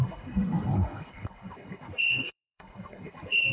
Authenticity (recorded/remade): remade